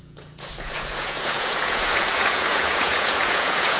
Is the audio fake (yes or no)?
yes